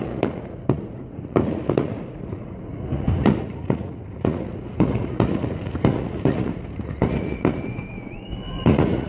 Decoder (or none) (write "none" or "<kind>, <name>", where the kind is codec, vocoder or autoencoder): vocoder, Vocos